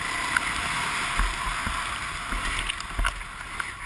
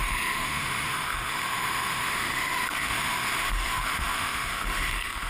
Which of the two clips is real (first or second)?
first